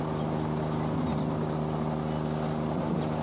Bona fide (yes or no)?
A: yes